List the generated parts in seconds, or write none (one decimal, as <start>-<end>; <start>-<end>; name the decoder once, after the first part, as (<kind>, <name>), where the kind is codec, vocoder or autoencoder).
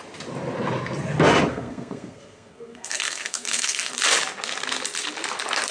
1.5-3.9 (codec, SNAC)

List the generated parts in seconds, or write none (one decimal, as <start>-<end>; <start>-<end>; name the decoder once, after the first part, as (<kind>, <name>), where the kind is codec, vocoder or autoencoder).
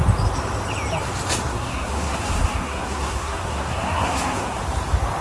1.5-4.6 (codec, SNAC)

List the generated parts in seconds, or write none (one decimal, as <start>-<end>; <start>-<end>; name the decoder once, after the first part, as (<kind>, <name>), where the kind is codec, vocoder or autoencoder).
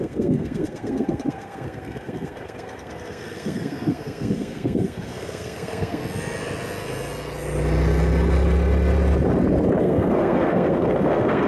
0.0-6.0 (codec, SNAC); 9.8-11.5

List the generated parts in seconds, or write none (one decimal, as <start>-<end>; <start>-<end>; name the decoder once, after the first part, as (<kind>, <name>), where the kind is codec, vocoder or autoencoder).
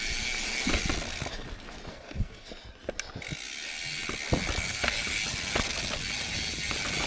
1.9-2.5 (codec, SNAC)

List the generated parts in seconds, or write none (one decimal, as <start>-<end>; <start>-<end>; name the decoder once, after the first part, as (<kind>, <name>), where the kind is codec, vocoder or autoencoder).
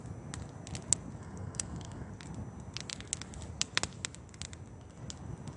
1.2-2.1 (codec, SNAC)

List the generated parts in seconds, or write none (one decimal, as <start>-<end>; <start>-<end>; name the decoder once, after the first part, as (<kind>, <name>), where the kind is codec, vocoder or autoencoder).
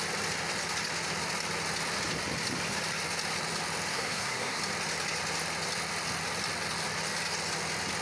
3.9-4.6 (codec, SNAC)